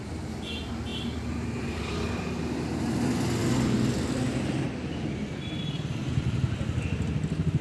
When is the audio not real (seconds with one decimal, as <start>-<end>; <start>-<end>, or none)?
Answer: none